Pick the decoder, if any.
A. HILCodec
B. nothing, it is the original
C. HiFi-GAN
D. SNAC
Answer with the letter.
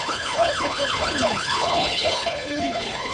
A